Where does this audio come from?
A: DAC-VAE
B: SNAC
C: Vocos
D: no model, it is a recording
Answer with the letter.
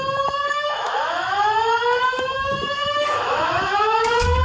A